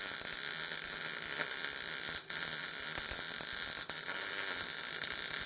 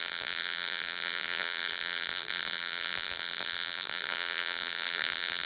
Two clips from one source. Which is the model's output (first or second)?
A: second